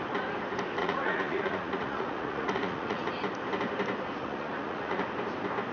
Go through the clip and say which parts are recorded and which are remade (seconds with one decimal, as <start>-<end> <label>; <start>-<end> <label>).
0.0-0.8 recorded; 0.8-3.1 remade; 3.1-4.2 recorded; 4.2-5.0 remade; 5.0-5.7 recorded